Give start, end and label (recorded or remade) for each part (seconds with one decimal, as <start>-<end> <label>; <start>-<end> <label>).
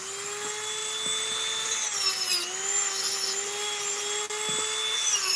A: 0.0-5.4 recorded